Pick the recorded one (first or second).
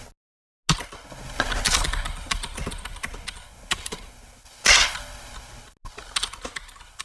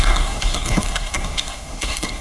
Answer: first